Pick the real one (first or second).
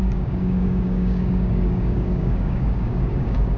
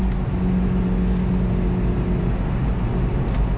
second